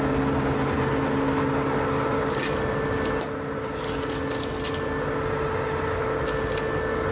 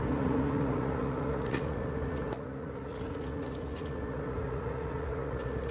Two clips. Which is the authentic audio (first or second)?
first